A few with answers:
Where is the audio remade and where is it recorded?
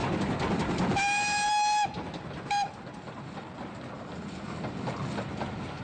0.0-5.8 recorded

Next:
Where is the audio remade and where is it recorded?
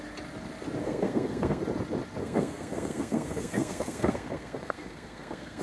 0.0-0.8 recorded; 0.8-1.6 remade; 1.6-2.2 recorded; 2.2-5.6 remade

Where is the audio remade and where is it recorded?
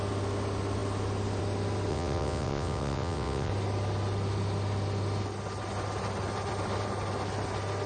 0.0-1.9 recorded; 1.9-3.5 remade; 3.5-7.9 recorded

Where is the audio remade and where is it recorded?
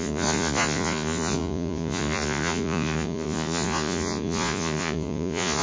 0.0-5.6 remade